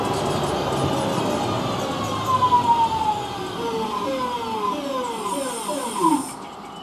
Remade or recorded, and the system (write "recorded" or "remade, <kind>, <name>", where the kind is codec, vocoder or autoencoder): recorded